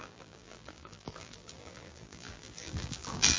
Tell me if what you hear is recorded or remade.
remade